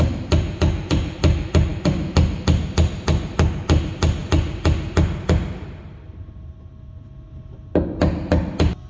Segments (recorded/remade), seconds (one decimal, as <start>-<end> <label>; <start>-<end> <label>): 0.0-8.9 recorded